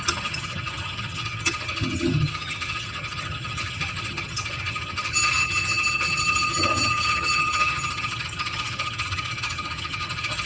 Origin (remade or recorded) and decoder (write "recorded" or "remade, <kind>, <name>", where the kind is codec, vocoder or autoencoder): remade, vocoder, HiFi-GAN